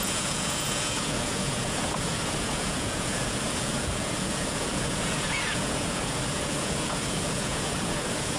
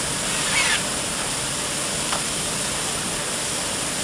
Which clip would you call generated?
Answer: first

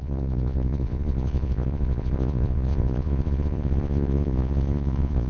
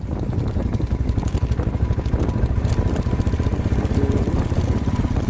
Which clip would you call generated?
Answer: first